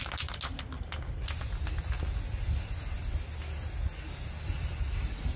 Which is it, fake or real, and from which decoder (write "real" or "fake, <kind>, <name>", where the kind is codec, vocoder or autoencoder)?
real